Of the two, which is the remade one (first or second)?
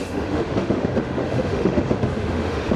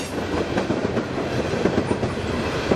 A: first